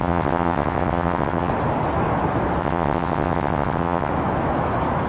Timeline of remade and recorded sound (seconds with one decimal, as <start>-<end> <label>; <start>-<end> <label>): 0.0-1.5 remade; 1.5-2.6 recorded; 2.6-4.1 remade; 4.1-5.1 recorded

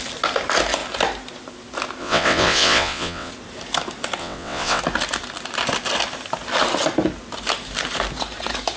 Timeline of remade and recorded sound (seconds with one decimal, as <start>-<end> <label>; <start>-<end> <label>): 0.0-2.0 recorded; 2.0-3.3 remade; 3.3-4.2 recorded; 4.2-4.8 remade; 4.8-8.8 recorded

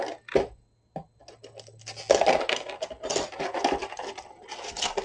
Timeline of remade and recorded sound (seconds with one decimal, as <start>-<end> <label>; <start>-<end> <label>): 0.0-5.0 recorded